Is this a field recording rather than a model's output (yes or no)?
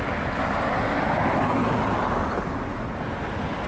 yes